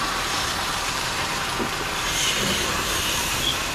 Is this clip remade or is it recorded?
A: remade